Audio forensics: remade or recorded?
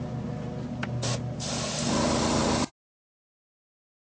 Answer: recorded